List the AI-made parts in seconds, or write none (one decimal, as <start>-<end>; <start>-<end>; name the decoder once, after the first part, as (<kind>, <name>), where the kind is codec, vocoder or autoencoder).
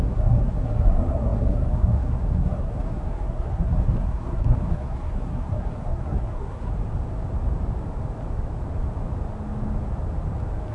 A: 0.0-6.7 (codec, SNAC)